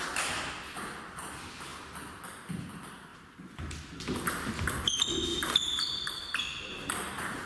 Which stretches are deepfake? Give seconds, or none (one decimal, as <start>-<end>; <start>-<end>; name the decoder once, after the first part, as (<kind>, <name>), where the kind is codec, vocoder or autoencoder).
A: 5.3-7.5 (vocoder, BigVGAN v2)